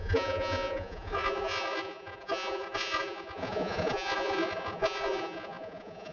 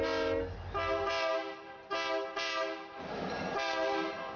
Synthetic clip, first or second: first